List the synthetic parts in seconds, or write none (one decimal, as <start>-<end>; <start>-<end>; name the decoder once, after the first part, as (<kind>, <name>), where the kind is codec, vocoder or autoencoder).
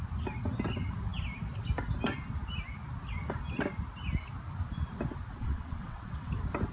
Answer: 5.4-6.3 (vocoder, WaveNeXt)